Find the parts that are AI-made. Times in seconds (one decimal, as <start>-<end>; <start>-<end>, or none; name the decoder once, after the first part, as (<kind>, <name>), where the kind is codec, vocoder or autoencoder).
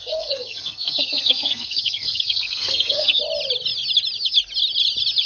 0.0-3.2 (codec, SNAC)